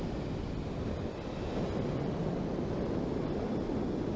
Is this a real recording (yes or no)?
yes